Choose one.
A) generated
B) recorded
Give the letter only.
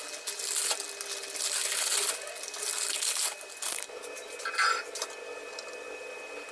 B